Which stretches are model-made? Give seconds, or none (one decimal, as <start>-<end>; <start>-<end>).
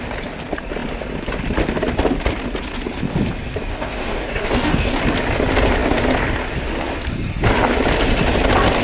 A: 3.7-5.0